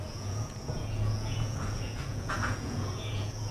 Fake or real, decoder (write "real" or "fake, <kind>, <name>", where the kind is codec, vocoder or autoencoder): fake, vocoder, Vocos